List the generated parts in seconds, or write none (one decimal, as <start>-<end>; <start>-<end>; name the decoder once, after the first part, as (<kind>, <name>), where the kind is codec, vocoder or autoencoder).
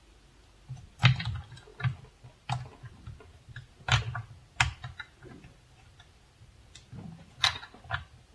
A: none